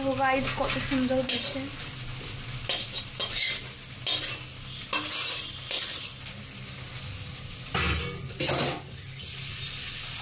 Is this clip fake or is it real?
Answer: real